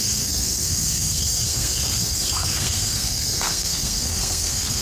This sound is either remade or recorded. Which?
remade